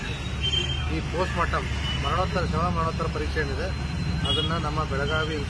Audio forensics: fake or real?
real